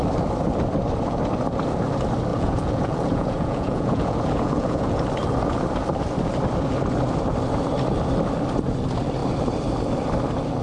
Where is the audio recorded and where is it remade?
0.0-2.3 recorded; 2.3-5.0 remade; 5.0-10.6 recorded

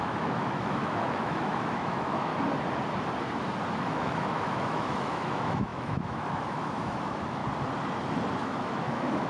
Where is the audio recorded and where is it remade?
0.0-2.3 remade; 2.3-3.7 recorded; 3.7-7.4 remade; 7.4-8.4 recorded; 8.4-9.3 remade

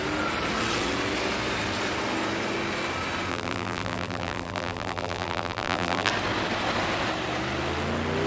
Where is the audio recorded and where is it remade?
0.0-3.3 recorded; 3.3-6.1 remade; 6.1-8.3 recorded

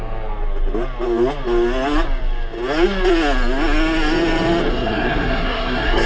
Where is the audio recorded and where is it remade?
0.0-4.7 recorded; 4.7-6.1 remade

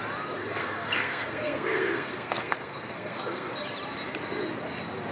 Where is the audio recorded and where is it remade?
0.0-0.4 recorded; 0.4-3.5 remade; 3.5-5.1 recorded

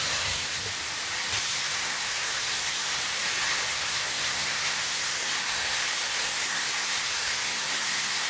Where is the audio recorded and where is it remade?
0.0-0.6 remade; 0.6-1.4 recorded; 1.4-3.0 remade; 3.0-3.7 recorded; 3.7-8.3 remade